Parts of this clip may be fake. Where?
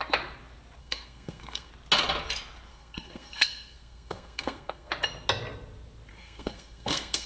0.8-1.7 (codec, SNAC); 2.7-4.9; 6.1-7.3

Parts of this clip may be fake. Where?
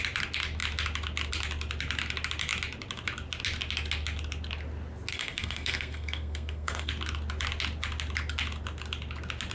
5.1-6.9 (codec, SNAC)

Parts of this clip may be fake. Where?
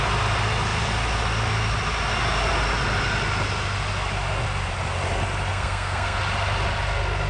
5.5-6.2 (codec, SNAC)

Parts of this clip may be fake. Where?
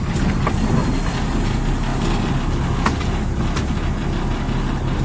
none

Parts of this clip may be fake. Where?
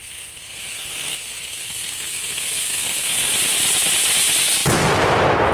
0.0-3.3 (codec, SNAC)